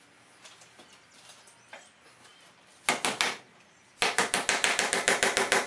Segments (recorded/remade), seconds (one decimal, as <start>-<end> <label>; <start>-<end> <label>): 0.0-5.7 recorded